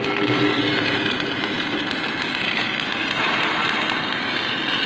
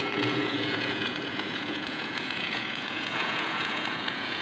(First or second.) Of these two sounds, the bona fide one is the first